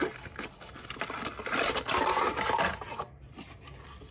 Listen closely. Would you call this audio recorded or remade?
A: recorded